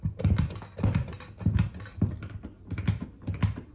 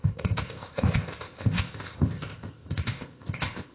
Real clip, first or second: first